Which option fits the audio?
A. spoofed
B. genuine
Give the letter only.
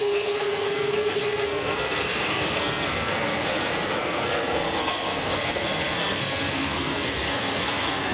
A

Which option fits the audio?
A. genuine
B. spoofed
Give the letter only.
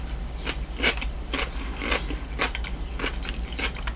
A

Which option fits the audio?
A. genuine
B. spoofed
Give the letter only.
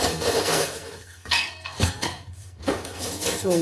B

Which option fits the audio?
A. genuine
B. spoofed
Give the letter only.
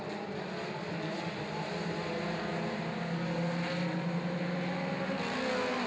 A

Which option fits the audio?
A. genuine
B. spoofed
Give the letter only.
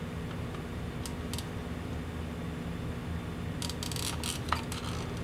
A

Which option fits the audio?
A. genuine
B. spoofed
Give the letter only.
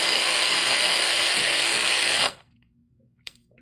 B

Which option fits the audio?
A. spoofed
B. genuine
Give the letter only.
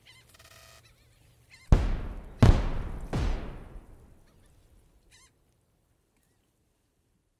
B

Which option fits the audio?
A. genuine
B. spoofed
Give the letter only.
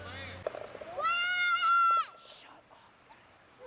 A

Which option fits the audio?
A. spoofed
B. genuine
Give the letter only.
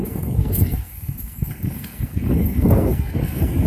A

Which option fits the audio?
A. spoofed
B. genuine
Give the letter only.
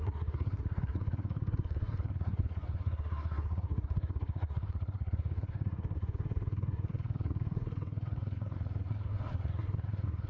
A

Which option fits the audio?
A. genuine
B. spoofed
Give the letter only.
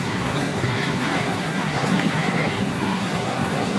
B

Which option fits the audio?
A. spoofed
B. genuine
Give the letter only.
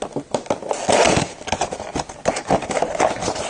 B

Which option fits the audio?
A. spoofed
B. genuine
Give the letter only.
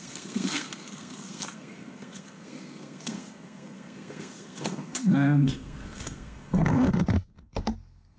A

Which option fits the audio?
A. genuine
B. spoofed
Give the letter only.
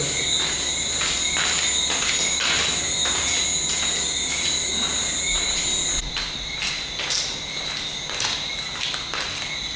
A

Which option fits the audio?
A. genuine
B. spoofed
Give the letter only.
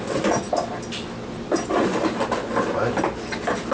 A